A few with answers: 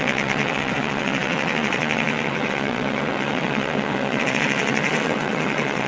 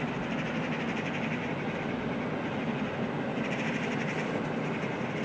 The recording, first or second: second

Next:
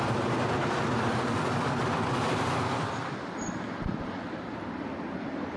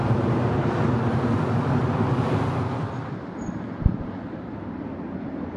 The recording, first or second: second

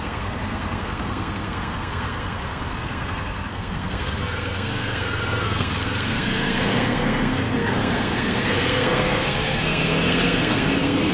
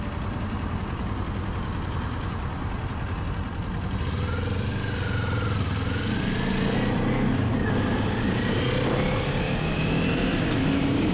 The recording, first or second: second